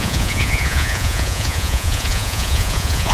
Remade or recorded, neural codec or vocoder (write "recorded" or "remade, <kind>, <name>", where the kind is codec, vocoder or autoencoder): remade, vocoder, Vocos